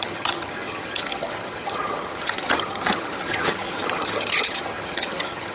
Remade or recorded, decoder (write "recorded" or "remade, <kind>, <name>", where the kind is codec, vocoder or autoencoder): remade, vocoder, HiFi-GAN